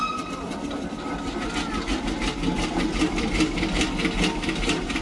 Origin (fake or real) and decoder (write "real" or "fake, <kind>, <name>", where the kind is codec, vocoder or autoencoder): real